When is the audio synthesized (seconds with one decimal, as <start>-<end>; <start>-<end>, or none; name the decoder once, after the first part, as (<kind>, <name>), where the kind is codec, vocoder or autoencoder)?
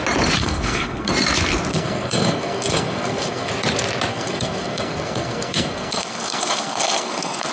0.4-1.1 (codec, SNAC); 1.7-3.5; 4.1-7.5